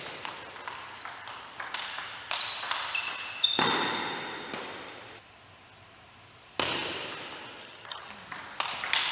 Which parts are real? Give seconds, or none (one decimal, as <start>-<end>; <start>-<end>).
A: 0.0-7.6; 8.1-9.1

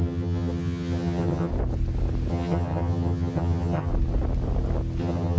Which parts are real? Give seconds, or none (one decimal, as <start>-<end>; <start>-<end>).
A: 1.5-2.3; 3.9-5.0

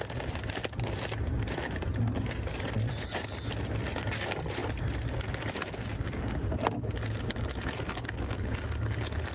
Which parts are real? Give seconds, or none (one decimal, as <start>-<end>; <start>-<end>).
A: 0.0-9.3

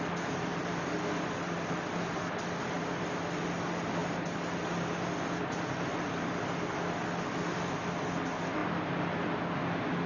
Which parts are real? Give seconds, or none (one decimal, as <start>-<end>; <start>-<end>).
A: 0.0-10.1

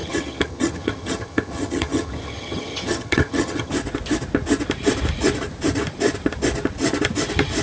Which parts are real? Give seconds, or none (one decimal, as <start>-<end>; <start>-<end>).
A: 3.7-7.6